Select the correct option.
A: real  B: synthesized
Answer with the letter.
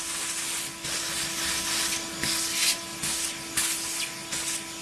A